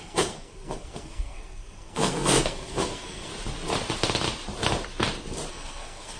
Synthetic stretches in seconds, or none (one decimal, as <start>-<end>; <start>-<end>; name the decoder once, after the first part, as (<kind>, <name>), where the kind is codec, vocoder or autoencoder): 0.0-3.3 (codec, SNAC); 5.5-6.2